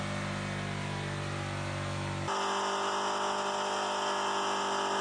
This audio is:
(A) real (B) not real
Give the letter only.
A